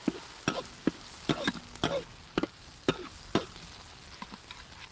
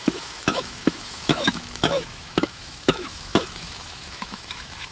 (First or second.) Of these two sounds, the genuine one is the first